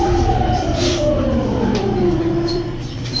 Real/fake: fake